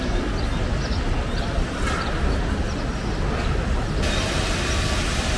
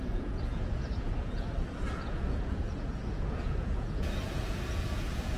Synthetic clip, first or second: second